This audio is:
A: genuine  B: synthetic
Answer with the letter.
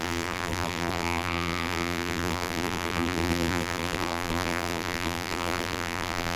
B